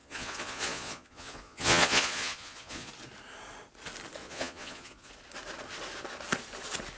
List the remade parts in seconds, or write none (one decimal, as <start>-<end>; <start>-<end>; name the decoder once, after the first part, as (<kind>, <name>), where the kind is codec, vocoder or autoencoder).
0.0-2.9 (vocoder, Vocos); 4.2-5.1